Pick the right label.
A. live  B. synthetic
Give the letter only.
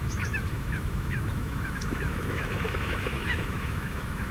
B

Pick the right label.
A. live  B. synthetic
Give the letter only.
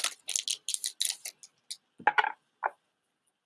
A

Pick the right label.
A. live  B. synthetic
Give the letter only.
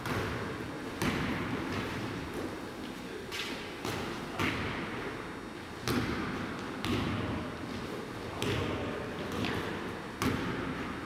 A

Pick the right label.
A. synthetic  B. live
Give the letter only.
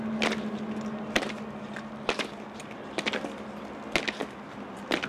B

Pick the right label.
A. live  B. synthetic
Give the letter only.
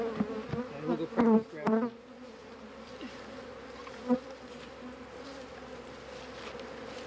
A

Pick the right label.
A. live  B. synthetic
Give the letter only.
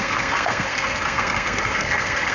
B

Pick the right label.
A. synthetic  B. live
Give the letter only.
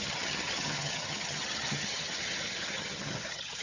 A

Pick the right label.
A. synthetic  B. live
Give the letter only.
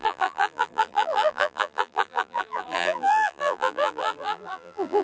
A